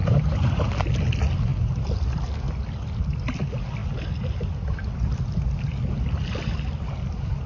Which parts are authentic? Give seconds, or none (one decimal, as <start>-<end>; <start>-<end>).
0.7-7.5